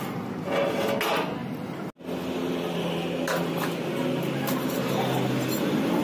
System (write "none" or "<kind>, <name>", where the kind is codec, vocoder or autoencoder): none